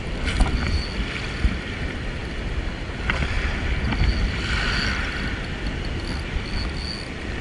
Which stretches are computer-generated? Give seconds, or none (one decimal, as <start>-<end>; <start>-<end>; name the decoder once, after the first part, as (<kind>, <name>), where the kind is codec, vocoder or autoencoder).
none